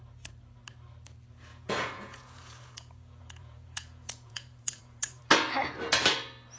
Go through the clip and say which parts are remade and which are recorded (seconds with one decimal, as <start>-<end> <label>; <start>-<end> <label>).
0.0-1.5 recorded; 1.5-5.2 remade; 5.2-6.6 recorded